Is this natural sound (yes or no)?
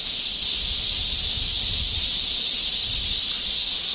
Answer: yes